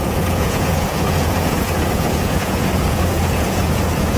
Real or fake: fake